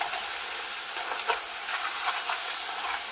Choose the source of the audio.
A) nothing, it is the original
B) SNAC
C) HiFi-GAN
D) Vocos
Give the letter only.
A